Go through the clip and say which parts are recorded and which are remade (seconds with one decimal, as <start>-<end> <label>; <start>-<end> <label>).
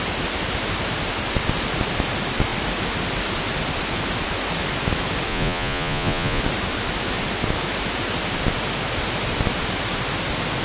0.0-5.3 recorded; 5.3-6.4 remade; 6.4-10.6 recorded